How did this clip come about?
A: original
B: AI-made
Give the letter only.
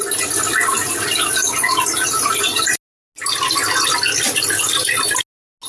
A